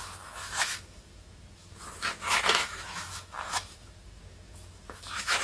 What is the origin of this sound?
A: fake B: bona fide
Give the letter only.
A